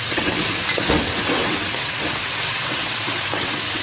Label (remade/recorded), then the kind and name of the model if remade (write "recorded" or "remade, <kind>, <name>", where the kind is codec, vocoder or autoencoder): remade, vocoder, WaveNeXt